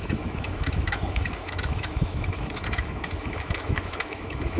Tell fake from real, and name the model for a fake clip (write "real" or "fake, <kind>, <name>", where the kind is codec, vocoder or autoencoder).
fake, autoencoder, DAC-VAE